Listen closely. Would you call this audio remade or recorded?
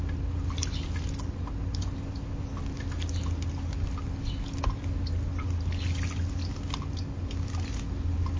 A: recorded